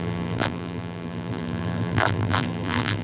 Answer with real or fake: fake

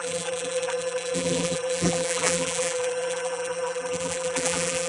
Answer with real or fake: fake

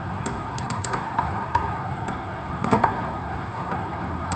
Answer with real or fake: fake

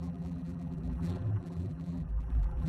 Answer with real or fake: fake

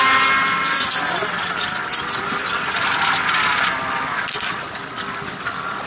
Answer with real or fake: real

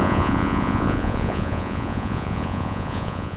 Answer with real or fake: fake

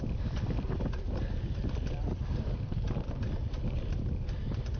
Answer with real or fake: real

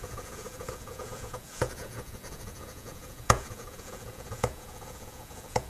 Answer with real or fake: fake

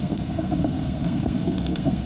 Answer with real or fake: fake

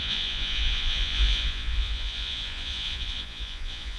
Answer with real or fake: fake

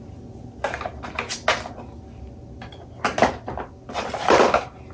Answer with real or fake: real